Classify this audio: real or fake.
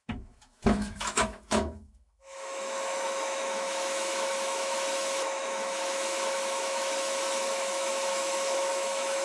fake